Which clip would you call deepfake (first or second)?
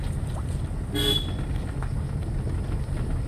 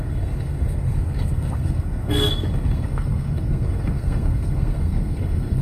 second